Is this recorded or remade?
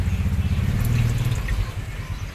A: recorded